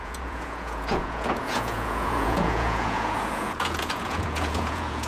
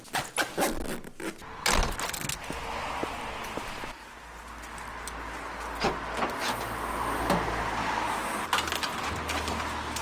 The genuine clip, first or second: second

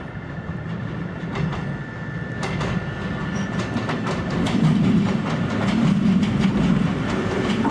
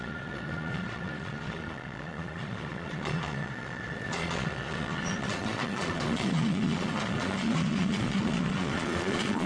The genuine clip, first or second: first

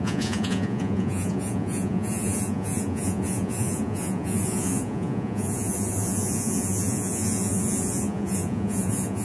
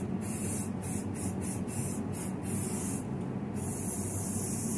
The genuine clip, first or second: second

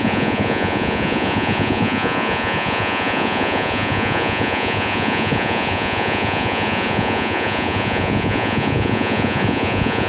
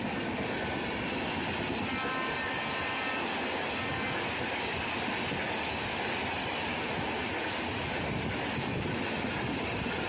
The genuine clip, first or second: second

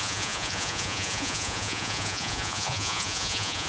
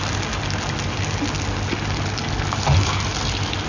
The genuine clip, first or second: second